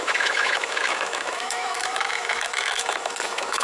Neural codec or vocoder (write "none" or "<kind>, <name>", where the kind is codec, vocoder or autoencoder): autoencoder, DAC-VAE